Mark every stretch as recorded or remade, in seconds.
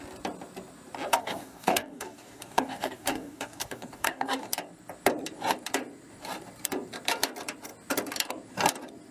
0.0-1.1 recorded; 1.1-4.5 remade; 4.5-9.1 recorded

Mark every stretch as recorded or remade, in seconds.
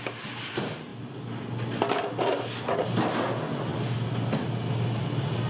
0.0-5.5 recorded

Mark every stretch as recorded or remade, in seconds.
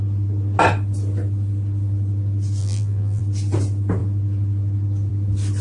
0.0-2.6 recorded; 2.6-3.2 remade; 3.2-5.6 recorded